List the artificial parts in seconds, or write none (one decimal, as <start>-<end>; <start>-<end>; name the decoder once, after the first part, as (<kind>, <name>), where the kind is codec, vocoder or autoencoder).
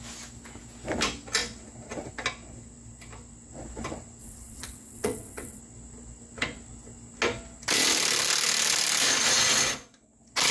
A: 4.2-5.6 (vocoder, WaveNeXt)